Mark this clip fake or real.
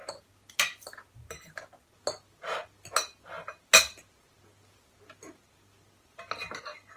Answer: real